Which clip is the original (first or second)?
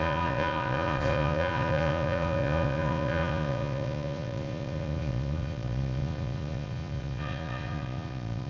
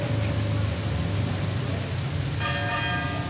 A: second